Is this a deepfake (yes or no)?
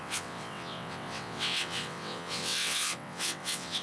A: yes